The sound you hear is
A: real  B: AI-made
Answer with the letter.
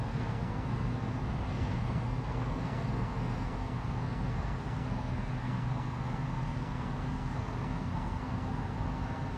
B